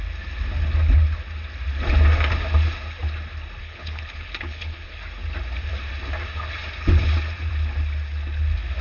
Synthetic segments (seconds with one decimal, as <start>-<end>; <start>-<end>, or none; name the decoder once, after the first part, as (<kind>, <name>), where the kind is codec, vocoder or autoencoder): 3.6-5.0 (codec, HILCodec)